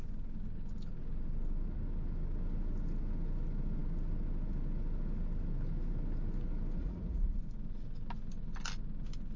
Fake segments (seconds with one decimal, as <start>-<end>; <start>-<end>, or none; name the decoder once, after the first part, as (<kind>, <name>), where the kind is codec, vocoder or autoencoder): 6.8-7.4 (vocoder, Vocos)